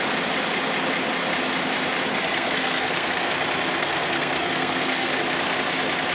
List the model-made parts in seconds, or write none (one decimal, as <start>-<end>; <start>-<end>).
2.1-3.3; 3.8-5.1